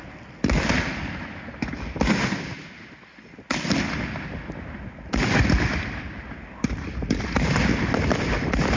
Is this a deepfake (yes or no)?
no